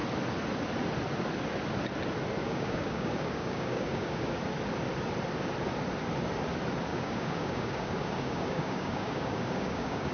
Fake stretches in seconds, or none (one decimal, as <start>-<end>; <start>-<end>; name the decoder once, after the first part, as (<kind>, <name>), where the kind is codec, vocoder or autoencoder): 2.4-4.3 (codec, DAC); 6.9-10.1